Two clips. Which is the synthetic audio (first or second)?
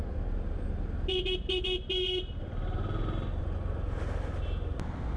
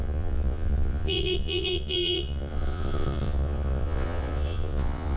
second